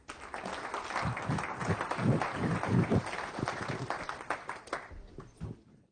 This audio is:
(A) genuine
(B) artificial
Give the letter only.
A